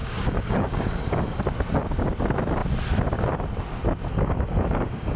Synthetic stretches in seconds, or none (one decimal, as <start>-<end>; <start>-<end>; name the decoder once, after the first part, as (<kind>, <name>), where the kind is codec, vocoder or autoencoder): 0.0-1.4 (codec, DAC); 4.1-5.2